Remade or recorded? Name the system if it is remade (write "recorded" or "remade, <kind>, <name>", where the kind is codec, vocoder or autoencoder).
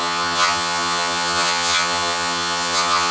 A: remade, vocoder, HiFi-GAN